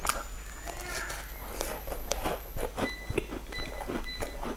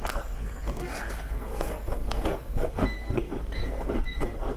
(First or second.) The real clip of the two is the first